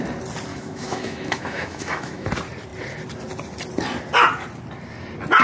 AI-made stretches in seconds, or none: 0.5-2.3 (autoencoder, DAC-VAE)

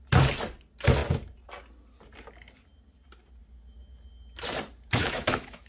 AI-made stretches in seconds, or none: 5.0-5.7 (autoencoder, DAC-VAE)

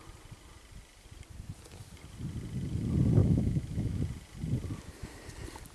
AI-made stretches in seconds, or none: 3.2-4.0 (autoencoder, DAC-VAE)

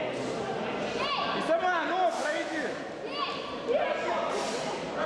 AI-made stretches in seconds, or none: 2.2-2.8 (autoencoder, DAC-VAE)

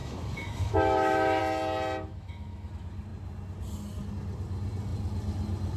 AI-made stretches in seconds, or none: 0.0-1.4 (autoencoder, DAC-VAE); 2.1-2.7

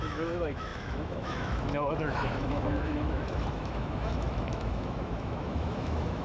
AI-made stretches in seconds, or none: 0.0-6.2 (autoencoder, DAC-VAE)